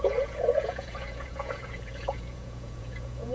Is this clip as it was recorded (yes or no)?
no